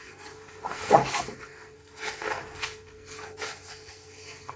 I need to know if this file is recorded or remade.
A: remade